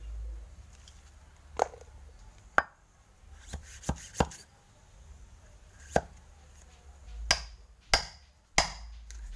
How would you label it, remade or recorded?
recorded